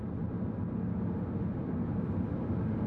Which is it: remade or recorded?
recorded